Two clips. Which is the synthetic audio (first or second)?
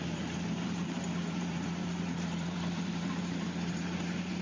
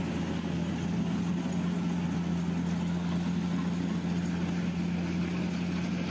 first